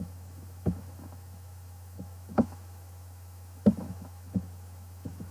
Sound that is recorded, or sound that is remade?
remade